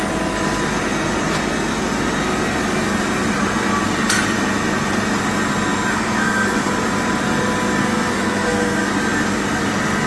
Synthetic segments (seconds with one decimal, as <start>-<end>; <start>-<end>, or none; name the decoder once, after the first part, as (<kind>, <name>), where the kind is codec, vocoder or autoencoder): 5.9-6.7 (codec, SNAC); 7.8-8.9